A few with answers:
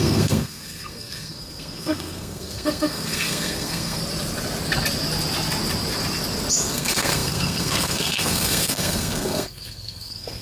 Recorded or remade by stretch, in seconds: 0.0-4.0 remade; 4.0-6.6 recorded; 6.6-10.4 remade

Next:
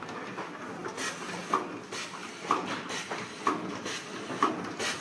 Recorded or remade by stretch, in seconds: 0.0-2.2 recorded; 2.2-4.5 remade; 4.5-5.0 recorded

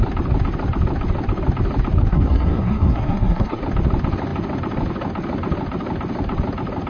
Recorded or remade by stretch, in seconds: 0.0-2.1 recorded; 2.1-3.6 remade; 3.6-6.9 recorded

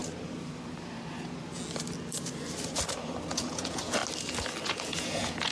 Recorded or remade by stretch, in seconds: 0.0-3.3 recorded; 3.3-4.0 remade; 4.0-4.6 recorded; 4.6-5.5 remade

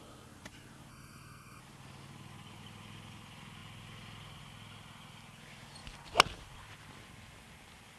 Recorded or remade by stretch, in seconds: 0.0-0.9 recorded; 0.9-1.6 remade; 1.6-8.0 recorded

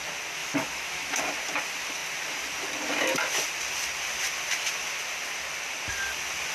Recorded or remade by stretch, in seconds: 0.0-0.4 recorded; 0.4-1.2 remade; 1.2-6.5 recorded

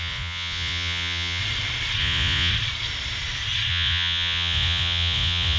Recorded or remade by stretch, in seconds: 0.0-1.4 remade; 1.4-2.0 recorded; 2.0-2.5 remade; 2.5-3.7 recorded; 3.7-5.6 remade

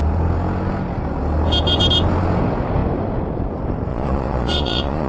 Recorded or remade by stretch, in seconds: 0.0-3.9 recorded; 3.9-5.1 remade